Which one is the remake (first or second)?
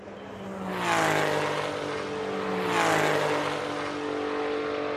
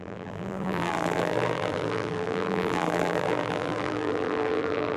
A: second